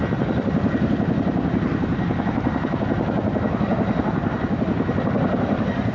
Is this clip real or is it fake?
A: real